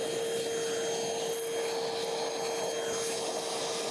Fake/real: real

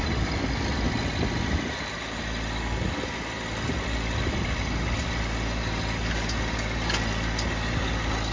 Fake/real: real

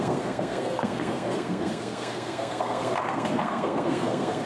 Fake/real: fake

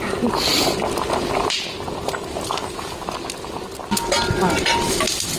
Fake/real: real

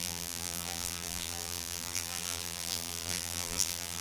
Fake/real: fake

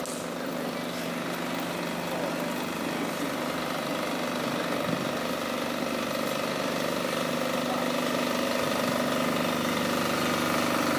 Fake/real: real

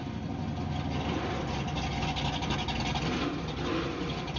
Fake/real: real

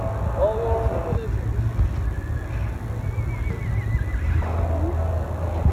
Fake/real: real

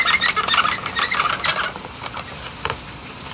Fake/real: real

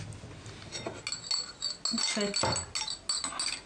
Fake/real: real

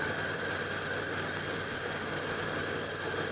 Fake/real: real